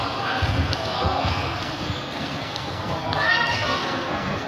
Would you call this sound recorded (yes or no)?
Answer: no